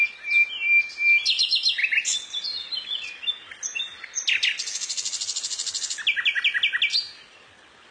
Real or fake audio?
real